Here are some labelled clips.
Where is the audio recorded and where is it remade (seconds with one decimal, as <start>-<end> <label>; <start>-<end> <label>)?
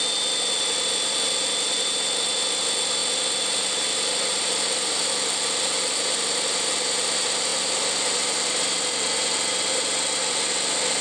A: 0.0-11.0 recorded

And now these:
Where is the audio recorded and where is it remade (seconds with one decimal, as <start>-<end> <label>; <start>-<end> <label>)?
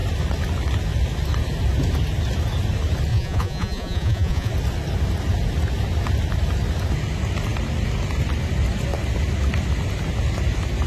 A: 0.0-3.1 recorded; 3.1-4.5 remade; 4.5-10.9 recorded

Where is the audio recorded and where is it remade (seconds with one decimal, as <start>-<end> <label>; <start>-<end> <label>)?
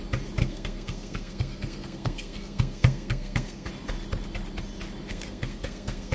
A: 0.0-0.4 recorded; 0.4-3.7 remade; 3.7-5.1 recorded; 5.1-6.1 remade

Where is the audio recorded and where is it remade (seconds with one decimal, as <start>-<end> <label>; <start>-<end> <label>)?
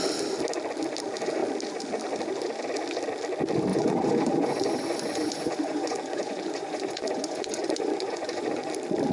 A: 0.0-3.7 recorded; 3.7-8.7 remade; 8.7-9.1 recorded